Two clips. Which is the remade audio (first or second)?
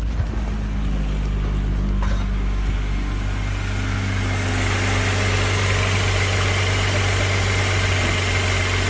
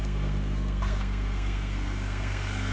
second